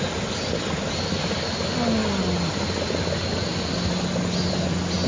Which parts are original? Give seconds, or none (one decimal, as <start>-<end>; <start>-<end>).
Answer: 0.0-5.1